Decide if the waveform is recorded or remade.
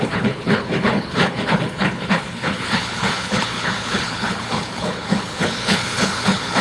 remade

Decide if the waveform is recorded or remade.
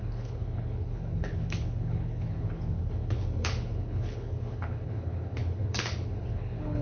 remade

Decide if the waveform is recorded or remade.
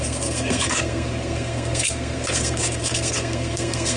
remade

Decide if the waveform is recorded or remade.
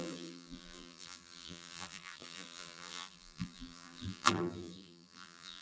remade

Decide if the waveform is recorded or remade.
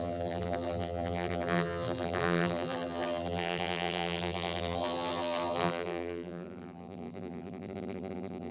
remade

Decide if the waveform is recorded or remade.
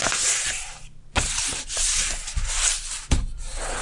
recorded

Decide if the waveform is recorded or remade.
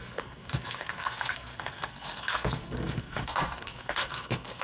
remade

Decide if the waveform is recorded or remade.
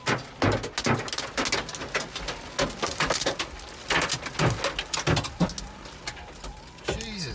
recorded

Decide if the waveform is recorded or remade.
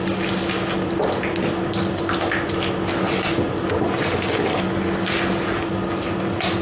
recorded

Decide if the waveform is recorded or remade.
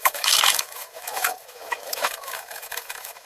remade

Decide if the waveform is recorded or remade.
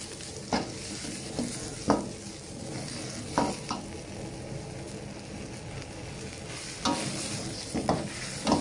recorded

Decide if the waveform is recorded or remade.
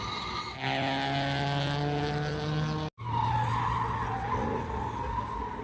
recorded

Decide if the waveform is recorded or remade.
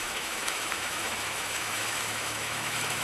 remade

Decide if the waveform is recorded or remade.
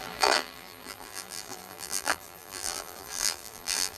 remade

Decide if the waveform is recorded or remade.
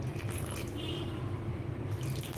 remade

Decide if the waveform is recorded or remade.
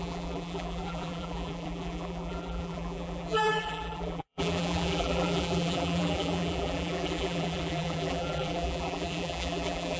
remade